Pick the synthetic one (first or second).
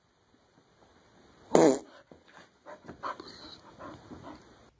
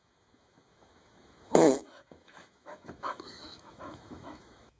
second